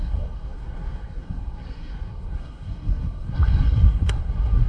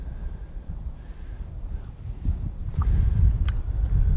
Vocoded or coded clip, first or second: first